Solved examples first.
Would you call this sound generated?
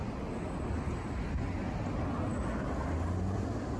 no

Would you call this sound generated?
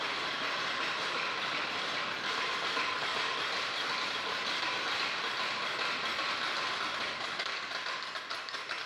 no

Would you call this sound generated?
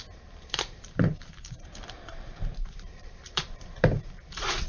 yes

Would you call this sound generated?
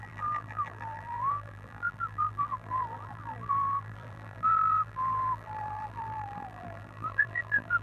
yes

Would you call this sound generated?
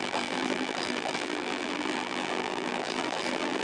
yes